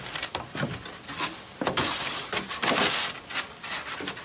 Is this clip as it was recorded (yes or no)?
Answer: yes